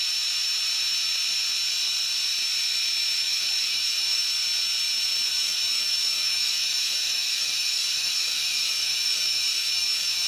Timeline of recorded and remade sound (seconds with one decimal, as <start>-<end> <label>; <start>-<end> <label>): 0.0-3.2 recorded; 3.2-4.2 remade; 4.2-5.3 recorded; 5.3-10.3 remade

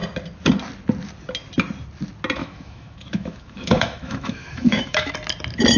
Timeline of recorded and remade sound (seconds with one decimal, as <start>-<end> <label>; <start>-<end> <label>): 0.0-2.4 recorded; 2.4-5.1 remade; 5.1-5.8 recorded

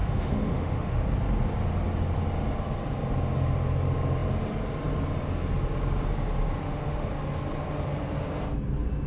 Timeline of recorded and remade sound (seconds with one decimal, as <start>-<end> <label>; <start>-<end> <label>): 0.0-1.0 remade; 1.0-6.6 recorded; 6.6-7.1 remade; 7.1-9.1 recorded

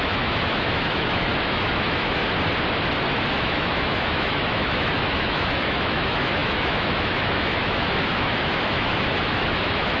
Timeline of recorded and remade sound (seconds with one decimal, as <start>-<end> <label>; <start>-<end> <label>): 0.0-2.2 remade; 2.2-3.4 recorded; 3.4-10.0 remade

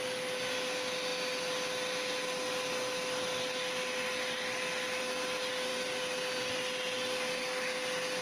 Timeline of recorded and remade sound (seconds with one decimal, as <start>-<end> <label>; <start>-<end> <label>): 0.0-8.2 recorded

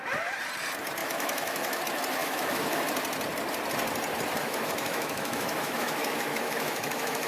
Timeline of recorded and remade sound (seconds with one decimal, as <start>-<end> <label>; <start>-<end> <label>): 0.0-1.0 recorded; 1.0-1.8 remade; 1.8-2.2 recorded; 2.2-2.8 remade; 2.8-4.4 recorded; 4.4-7.3 remade

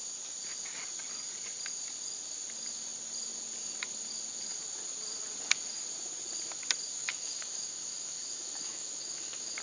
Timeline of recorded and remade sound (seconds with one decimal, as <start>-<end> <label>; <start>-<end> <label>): 0.0-7.0 recorded; 7.0-9.6 remade